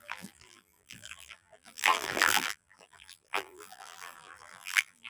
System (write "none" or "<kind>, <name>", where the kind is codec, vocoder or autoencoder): vocoder, BigVGAN v2